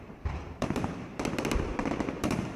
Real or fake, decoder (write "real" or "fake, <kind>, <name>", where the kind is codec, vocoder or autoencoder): fake, vocoder, BigVGAN v2